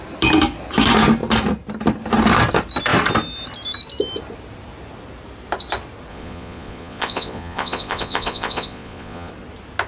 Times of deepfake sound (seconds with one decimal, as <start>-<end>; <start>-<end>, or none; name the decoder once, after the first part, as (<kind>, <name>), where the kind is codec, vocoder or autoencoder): 6.1-9.3 (vocoder, Vocos)

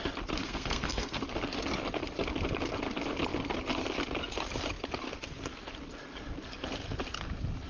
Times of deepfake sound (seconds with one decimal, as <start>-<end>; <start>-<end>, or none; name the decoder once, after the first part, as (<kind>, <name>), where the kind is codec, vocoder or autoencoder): 0.4-1.2 (codec, SNAC)

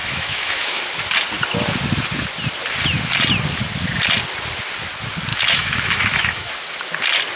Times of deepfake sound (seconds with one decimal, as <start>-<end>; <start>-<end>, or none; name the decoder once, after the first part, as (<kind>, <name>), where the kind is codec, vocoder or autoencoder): 0.0-0.8 (autoencoder, DAC-VAE); 5.3-6.5

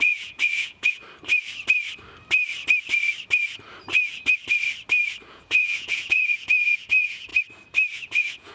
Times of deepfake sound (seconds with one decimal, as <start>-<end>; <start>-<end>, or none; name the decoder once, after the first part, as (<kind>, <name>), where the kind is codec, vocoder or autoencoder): 0.0-1.0 (vocoder, Vocos); 5.3-7.3; 8.0-8.5

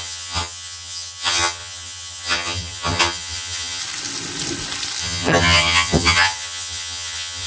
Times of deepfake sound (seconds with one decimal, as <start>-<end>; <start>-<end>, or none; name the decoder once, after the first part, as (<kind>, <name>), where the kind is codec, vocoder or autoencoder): 0.0-3.8 (vocoder, HiFi-GAN); 5.0-7.5

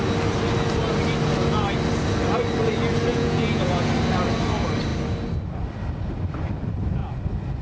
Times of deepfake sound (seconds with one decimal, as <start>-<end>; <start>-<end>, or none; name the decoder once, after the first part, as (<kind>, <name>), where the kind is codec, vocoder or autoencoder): 3.1-3.9 (vocoder, Vocos)

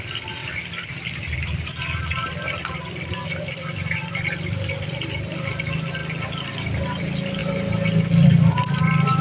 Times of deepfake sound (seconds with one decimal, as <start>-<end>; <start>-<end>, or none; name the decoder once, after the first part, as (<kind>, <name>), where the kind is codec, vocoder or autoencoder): 0.4-5.6 (vocoder, BigVGAN v2); 7.4-9.2

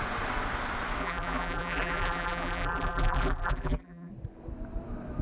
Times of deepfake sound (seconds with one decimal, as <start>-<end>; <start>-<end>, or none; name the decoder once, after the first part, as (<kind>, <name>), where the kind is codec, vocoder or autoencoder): 1.0-4.1 (vocoder, BigVGAN v2)